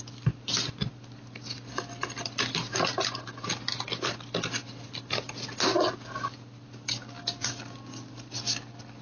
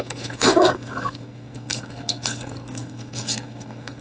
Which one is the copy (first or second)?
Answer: second